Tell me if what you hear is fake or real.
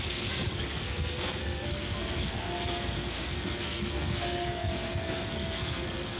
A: fake